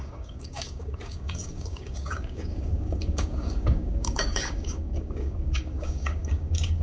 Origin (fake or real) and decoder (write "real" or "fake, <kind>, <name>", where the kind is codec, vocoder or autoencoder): fake, codec, DAC